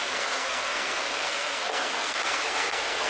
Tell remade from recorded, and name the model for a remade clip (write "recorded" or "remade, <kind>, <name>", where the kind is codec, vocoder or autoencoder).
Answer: remade, codec, SNAC